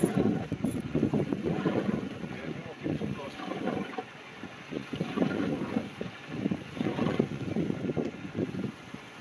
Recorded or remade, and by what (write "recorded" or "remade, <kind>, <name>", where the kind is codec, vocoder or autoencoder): remade, vocoder, Vocos